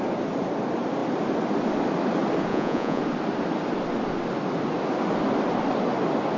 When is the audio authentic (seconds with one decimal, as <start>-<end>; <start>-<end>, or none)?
0.0-2.5; 3.0-6.4